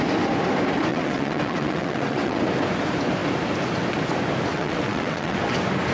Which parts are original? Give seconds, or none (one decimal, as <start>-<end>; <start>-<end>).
0.0-0.9; 2.4-4.5; 5.4-5.9